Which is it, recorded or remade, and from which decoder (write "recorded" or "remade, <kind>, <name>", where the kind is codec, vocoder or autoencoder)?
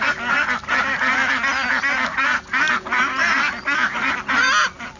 recorded